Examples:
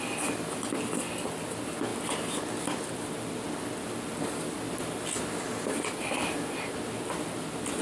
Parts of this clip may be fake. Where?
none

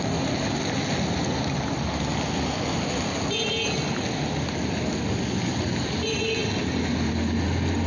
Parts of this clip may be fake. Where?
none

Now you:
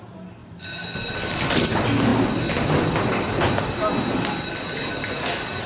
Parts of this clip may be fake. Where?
0.4-0.9 (vocoder, BigVGAN v2)

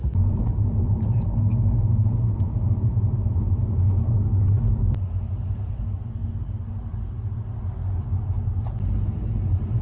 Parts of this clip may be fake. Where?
0.0-3.8 (vocoder, BigVGAN v2); 5.5-6.2